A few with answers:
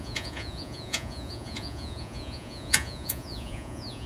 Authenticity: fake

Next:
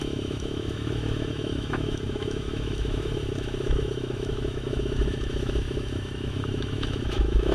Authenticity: fake